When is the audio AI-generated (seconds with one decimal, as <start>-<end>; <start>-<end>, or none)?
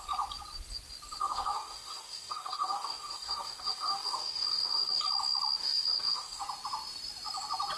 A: 1.2-5.0; 5.6-6.4